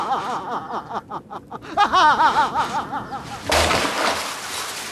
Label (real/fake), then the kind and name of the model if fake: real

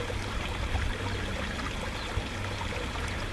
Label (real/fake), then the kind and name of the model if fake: real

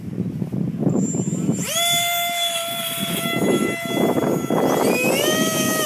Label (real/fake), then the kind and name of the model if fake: real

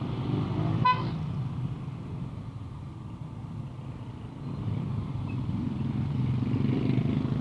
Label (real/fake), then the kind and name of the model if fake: real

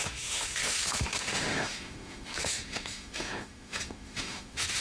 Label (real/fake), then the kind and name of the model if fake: fake, autoencoder, DAC-VAE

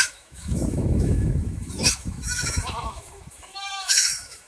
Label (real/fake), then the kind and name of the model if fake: fake, autoencoder, DAC-VAE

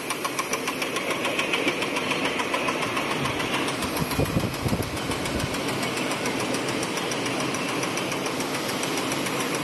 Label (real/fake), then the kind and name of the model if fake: real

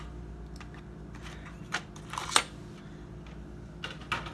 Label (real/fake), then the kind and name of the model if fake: real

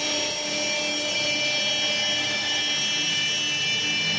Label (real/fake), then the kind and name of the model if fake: real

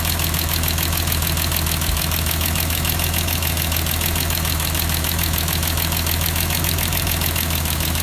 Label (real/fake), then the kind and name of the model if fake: fake, autoencoder, DAC-VAE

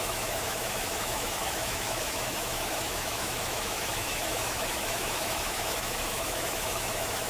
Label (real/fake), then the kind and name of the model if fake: fake, autoencoder, DAC-VAE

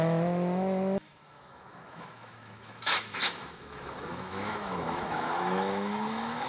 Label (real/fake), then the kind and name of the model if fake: fake, autoencoder, DAC-VAE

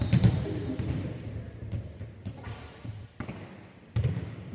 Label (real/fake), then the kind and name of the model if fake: real